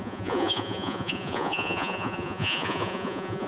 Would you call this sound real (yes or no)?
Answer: no